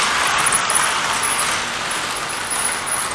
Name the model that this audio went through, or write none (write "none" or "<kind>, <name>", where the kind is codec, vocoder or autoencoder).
none